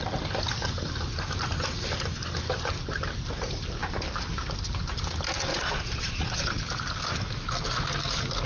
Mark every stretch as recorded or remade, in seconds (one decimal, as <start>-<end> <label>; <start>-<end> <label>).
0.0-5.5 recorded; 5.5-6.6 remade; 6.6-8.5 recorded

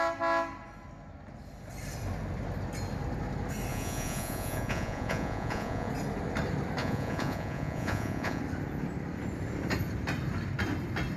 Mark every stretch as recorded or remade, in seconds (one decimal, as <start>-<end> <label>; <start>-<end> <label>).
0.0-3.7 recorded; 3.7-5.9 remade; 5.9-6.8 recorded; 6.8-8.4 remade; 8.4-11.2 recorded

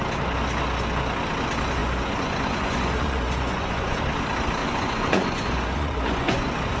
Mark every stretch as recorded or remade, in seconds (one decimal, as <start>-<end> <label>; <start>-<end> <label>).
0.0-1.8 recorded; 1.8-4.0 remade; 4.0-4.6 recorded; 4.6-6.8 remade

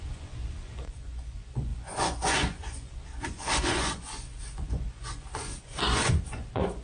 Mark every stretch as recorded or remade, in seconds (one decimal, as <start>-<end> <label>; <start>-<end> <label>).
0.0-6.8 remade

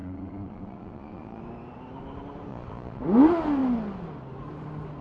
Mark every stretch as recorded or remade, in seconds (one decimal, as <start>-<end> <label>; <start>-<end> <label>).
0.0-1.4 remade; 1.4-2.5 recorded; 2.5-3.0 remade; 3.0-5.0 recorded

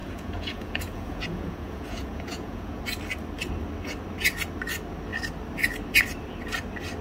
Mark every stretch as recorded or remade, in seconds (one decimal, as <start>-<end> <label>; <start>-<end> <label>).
0.0-2.8 remade; 2.8-7.0 recorded

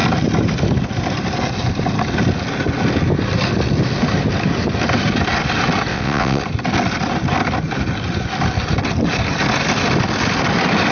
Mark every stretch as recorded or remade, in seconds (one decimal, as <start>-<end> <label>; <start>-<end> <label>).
0.0-5.9 recorded; 5.9-6.4 remade; 6.4-10.9 recorded

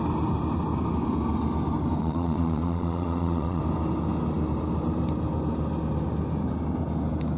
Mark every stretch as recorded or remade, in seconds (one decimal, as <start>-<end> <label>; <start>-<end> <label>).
0.0-2.0 recorded; 2.0-3.6 remade; 3.6-7.4 recorded